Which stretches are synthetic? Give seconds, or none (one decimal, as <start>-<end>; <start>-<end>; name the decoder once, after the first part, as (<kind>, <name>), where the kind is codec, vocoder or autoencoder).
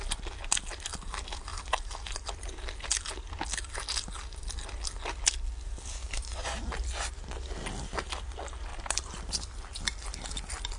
8.7-9.4 (vocoder, BigVGAN v2)